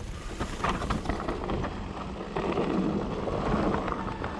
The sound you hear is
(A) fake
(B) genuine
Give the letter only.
B